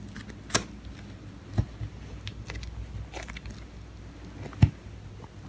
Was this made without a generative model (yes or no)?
yes